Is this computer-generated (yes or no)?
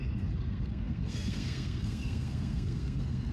yes